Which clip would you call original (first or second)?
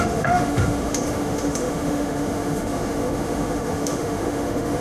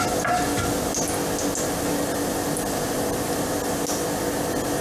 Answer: second